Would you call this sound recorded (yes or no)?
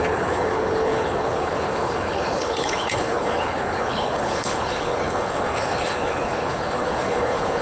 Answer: no